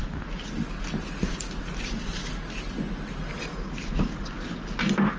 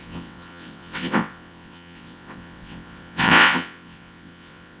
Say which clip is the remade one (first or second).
second